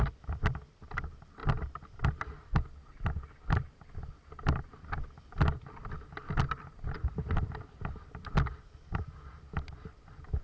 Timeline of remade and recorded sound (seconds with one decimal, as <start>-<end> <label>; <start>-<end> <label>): 0.0-10.4 recorded